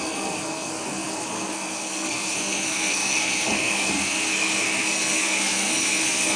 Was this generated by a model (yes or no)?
yes